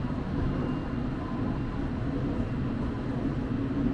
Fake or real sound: real